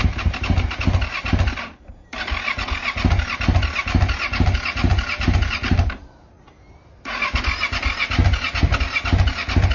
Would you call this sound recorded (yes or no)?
yes